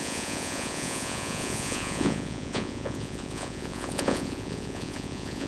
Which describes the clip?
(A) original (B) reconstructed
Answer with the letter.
B